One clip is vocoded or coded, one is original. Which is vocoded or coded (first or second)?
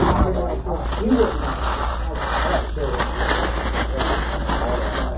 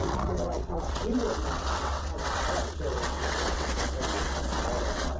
second